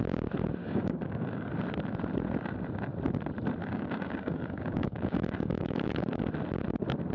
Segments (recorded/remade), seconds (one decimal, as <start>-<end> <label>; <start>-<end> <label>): 0.0-0.6 recorded; 0.6-1.5 remade; 1.5-3.6 recorded; 3.6-6.2 remade; 6.2-7.1 recorded